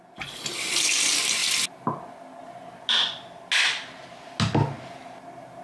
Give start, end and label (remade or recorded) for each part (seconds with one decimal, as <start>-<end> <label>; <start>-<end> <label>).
0.0-5.6 recorded